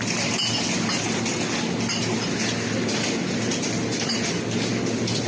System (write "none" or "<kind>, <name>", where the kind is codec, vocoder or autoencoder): none